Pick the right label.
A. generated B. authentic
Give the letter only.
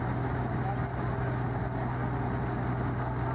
B